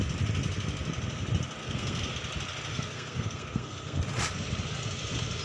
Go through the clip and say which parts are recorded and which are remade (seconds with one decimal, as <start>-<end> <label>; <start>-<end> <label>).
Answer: 0.0-1.6 recorded; 1.6-2.1 remade; 2.1-2.7 recorded; 2.7-4.0 remade; 4.0-5.4 recorded